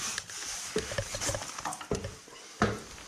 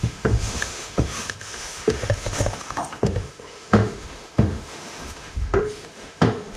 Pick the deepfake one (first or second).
second